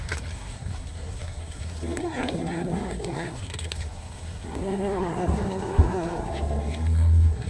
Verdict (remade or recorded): remade